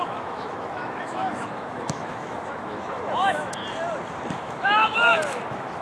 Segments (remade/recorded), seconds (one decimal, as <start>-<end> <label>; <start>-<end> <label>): 0.0-3.6 remade; 3.6-4.3 recorded; 4.3-5.8 remade